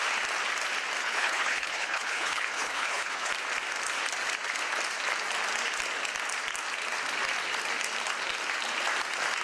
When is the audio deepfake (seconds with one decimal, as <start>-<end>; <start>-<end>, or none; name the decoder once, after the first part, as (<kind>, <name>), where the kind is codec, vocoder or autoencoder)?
1.0-3.3 (codec, HILCodec)